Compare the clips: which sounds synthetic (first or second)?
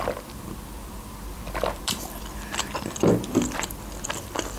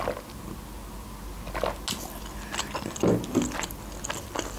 first